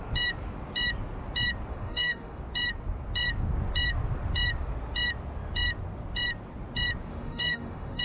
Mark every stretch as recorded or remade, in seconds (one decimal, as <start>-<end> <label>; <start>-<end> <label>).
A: 0.0-1.7 recorded; 1.7-2.4 remade; 2.4-7.1 recorded; 7.1-8.0 remade